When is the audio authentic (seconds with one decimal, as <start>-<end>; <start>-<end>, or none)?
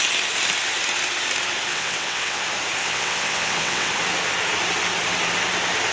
0.0-1.7; 2.4-2.8; 3.9-5.9